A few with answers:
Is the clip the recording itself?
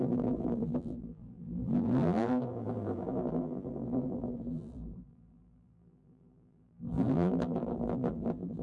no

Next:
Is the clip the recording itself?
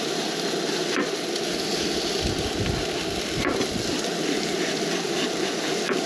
no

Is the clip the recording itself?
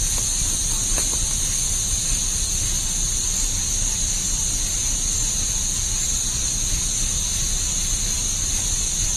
yes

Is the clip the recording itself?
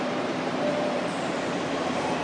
no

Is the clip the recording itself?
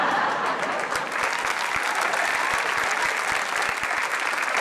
yes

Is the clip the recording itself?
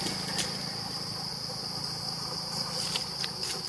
yes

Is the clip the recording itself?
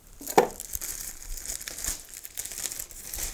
yes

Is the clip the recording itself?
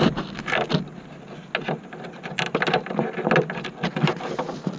yes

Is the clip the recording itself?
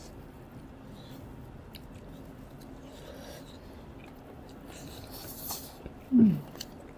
yes